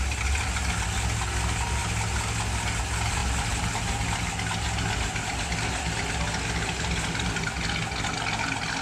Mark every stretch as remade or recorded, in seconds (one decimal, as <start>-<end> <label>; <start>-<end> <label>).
0.0-8.8 recorded